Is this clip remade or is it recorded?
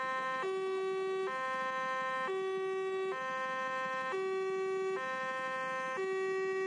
recorded